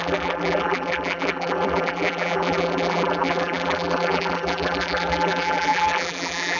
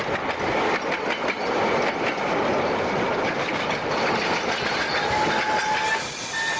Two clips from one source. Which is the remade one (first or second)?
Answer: first